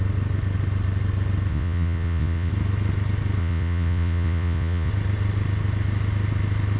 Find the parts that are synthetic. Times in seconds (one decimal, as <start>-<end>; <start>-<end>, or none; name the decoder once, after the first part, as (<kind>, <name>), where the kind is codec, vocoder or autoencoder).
1.5-2.5 (vocoder, Vocos); 3.4-4.9